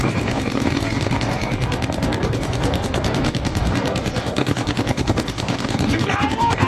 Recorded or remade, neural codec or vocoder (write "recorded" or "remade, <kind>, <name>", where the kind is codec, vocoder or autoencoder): remade, codec, DAC